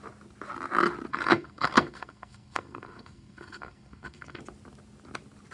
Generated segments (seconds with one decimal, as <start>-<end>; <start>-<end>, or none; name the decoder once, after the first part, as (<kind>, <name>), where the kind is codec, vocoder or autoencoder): 1.1-4.4 (codec, SNAC)